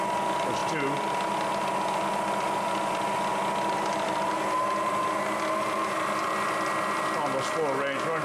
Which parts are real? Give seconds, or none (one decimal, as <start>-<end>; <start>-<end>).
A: 0.0-8.2